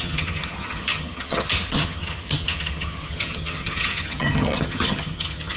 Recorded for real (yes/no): no